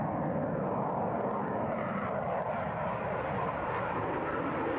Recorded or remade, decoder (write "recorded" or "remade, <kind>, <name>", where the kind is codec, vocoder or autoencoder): recorded